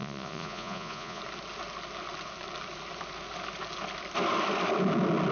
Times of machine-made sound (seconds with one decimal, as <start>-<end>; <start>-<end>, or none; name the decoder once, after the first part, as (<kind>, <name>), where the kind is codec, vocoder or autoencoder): 0.0-1.2 (vocoder, Vocos)